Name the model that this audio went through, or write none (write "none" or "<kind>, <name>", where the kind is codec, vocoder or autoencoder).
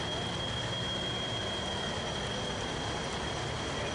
none